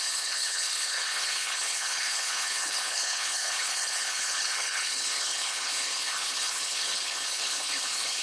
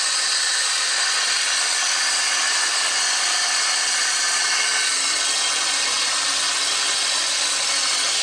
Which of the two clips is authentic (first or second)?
second